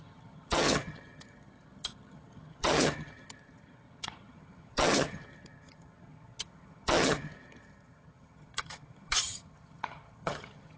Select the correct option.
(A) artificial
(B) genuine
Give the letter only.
A